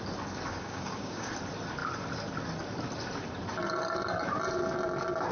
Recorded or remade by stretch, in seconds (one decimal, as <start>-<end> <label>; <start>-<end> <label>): 0.0-0.5 recorded; 0.5-1.3 remade; 1.3-5.3 recorded